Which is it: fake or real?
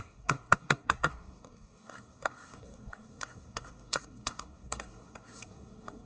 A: fake